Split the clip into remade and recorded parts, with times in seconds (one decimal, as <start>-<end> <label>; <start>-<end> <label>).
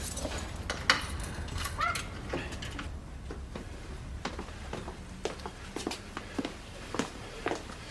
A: 0.0-1.2 recorded; 1.2-1.8 remade; 1.8-7.9 recorded